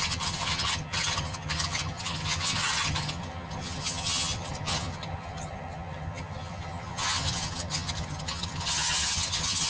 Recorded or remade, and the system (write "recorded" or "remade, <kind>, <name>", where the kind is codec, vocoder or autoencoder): remade, vocoder, HiFi-GAN